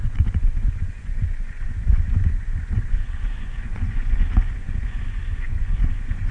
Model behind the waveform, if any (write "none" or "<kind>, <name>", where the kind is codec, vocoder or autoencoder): vocoder, Vocos